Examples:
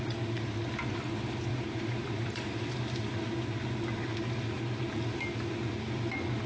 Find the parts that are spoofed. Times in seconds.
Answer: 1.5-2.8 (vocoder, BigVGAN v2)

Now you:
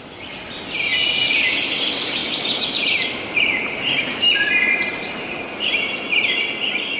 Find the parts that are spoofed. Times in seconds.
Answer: 0.9-1.4 (vocoder, BigVGAN v2); 2.2-6.4

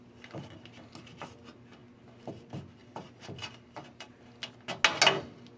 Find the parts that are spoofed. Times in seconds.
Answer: 2.8-4.2 (vocoder, BigVGAN v2)